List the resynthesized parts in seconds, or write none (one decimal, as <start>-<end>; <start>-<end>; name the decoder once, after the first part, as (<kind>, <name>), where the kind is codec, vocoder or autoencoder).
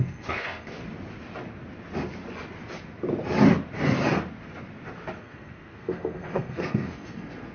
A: 0.0-0.8 (codec, SNAC); 5.2-7.5